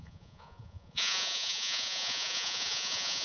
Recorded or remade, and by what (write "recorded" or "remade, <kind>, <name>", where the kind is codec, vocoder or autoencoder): remade, vocoder, Vocos